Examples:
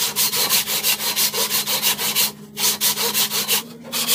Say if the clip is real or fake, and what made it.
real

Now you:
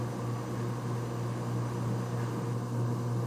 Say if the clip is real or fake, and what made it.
real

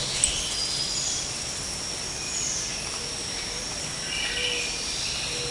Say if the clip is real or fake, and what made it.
real